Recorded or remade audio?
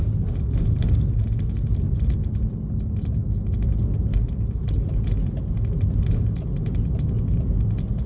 recorded